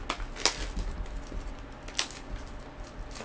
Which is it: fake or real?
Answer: real